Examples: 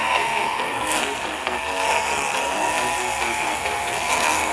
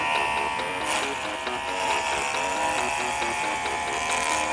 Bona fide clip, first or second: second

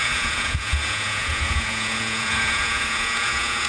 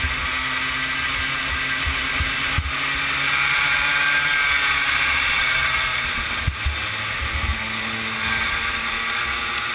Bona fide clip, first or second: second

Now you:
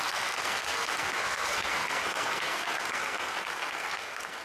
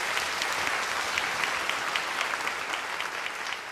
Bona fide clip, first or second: second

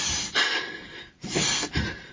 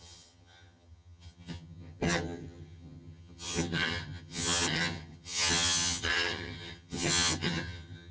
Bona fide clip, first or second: first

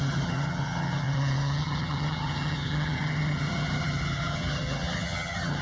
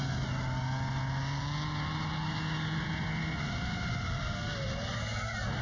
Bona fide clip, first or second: second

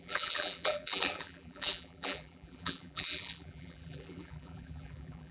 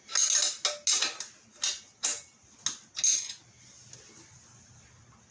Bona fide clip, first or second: second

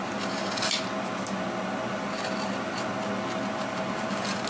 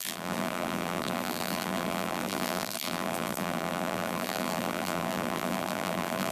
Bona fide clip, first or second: first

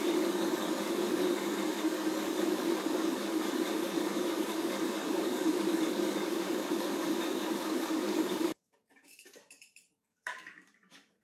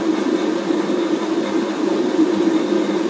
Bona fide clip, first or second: second